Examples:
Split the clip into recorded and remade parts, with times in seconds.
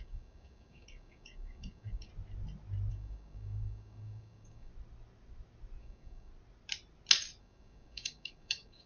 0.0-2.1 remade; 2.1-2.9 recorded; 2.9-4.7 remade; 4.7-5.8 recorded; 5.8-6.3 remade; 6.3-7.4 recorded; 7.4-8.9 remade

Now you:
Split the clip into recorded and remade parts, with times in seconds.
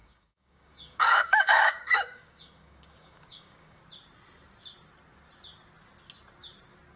0.0-3.8 remade; 3.8-7.0 recorded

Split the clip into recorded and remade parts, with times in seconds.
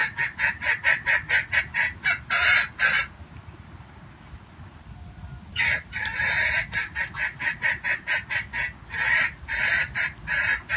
0.0-10.8 recorded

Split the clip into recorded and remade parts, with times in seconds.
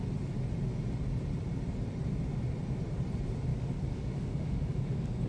0.0-3.5 recorded; 3.5-5.3 remade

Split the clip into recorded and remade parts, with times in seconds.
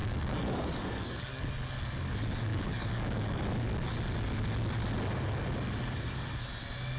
0.0-1.5 remade; 1.5-2.5 recorded; 2.5-3.4 remade; 3.4-7.0 recorded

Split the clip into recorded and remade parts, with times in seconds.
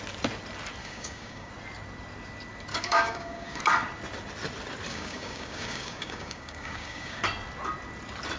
0.0-0.8 recorded; 0.8-1.5 remade; 1.5-2.7 recorded; 2.7-3.6 remade; 3.6-4.9 recorded; 4.9-7.2 remade; 7.2-8.4 recorded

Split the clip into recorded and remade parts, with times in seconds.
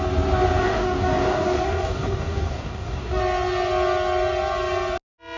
0.0-0.6 recorded; 0.6-3.2 remade; 3.2-5.4 recorded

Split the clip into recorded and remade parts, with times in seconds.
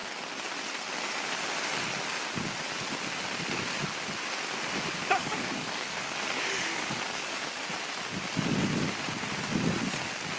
0.0-5.2 recorded; 5.2-7.6 remade; 7.6-10.4 recorded